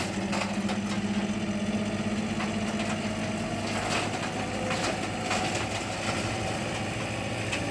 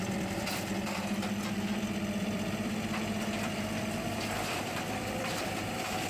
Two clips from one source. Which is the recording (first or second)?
first